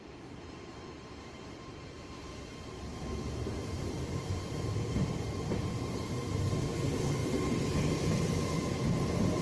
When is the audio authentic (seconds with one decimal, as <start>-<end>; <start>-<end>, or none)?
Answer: 2.9-4.4; 7.2-8.0